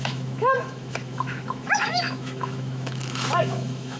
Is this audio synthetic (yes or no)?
yes